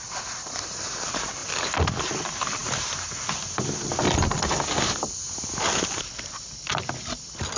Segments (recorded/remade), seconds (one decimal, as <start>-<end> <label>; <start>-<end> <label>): 0.0-7.6 recorded